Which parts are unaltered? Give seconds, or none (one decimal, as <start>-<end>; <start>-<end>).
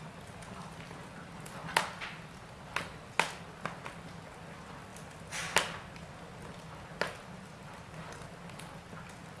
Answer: 0.0-9.4